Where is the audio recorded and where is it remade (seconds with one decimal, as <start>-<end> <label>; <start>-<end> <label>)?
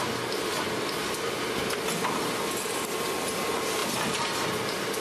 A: 0.0-3.8 recorded; 3.8-4.6 remade; 4.6-5.0 recorded